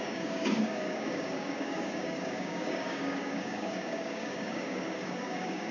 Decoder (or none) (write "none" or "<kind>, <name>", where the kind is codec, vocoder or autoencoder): codec, DAC